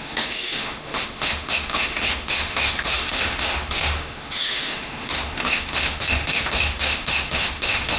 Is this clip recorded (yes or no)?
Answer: no